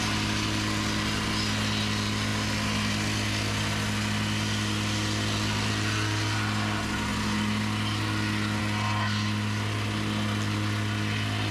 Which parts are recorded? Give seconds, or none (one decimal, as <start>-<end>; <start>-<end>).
0.0-11.5